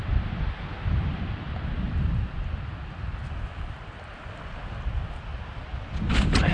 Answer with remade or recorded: recorded